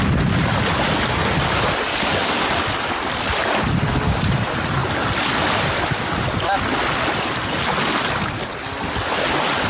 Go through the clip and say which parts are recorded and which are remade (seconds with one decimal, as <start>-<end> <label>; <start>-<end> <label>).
0.0-9.7 recorded